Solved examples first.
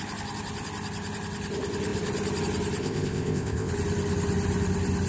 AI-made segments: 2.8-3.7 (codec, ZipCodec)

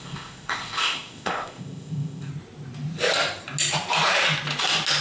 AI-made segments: 0.0-2.3 (codec, ZipCodec)

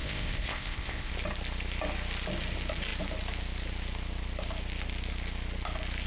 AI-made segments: 0.0-1.1 (codec, ZipCodec)

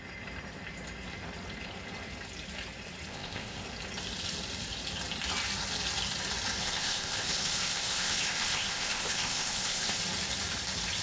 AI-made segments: 3.1-3.6 (codec, ZipCodec); 6.6-10.0

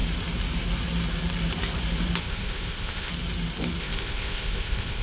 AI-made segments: 2.2-3.1 (codec, ZipCodec); 3.8-5.0

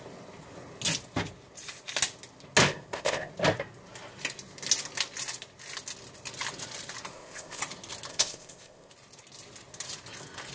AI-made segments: 2.6-3.3 (codec, ZipCodec); 7.1-7.6; 8.1-8.9